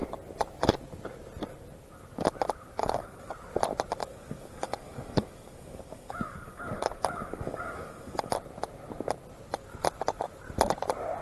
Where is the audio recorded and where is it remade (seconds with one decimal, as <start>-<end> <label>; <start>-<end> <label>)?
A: 0.0-2.8 recorded; 2.8-3.3 remade; 3.3-4.0 recorded; 4.0-8.3 remade; 8.3-11.2 recorded